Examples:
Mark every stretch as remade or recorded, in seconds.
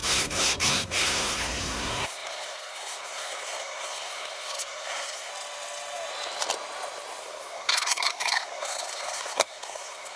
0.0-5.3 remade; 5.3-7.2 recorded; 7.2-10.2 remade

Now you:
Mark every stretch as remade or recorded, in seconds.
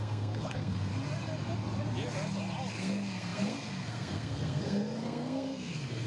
0.0-0.9 remade; 0.9-2.7 recorded; 2.7-6.1 remade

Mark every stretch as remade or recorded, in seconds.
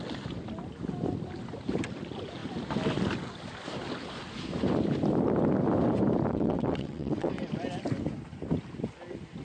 0.0-6.3 recorded; 6.3-7.3 remade; 7.3-9.4 recorded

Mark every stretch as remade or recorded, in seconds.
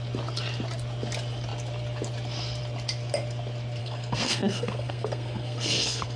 0.0-3.8 recorded; 3.8-6.2 remade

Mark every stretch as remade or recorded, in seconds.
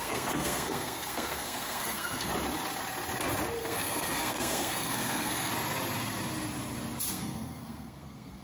0.0-2.3 remade; 2.3-3.6 recorded; 3.6-5.5 remade; 5.5-7.1 recorded; 7.1-8.4 remade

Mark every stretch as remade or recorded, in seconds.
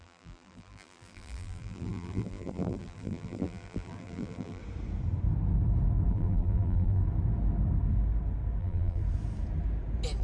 0.0-4.6 remade; 4.6-6.1 recorded; 6.1-7.0 remade; 7.0-8.6 recorded; 8.6-9.0 remade; 9.0-10.2 recorded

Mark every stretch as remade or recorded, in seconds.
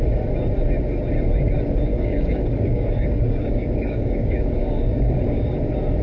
0.0-1.9 recorded; 1.9-5.5 remade; 5.5-6.0 recorded